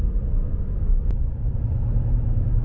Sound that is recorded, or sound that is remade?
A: recorded